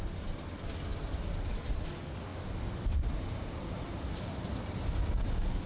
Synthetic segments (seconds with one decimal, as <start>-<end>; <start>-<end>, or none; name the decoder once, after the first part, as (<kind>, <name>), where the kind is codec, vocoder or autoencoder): none